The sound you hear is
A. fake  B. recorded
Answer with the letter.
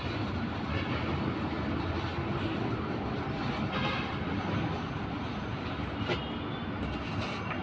B